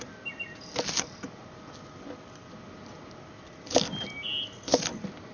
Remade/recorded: recorded